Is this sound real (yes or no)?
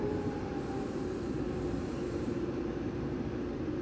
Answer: no